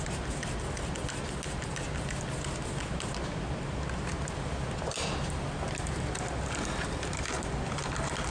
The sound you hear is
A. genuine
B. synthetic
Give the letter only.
A